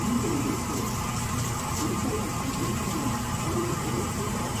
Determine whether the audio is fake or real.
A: fake